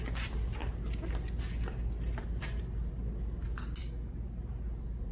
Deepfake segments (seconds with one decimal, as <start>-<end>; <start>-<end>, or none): none